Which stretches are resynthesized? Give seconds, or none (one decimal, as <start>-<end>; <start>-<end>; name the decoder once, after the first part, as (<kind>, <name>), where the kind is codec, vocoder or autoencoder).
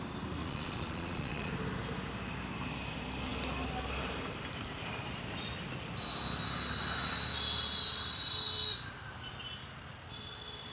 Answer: 0.4-1.5 (vocoder, Vocos)